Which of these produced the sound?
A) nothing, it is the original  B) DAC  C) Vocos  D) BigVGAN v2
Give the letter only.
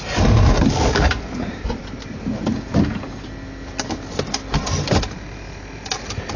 A